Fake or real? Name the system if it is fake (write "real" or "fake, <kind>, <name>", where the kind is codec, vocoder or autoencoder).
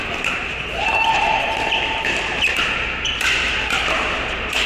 fake, vocoder, BigVGAN v2